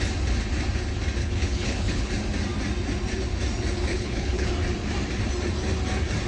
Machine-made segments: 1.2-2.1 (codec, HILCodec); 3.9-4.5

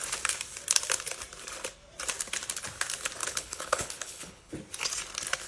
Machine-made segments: 3.2-4.5 (codec, HILCodec)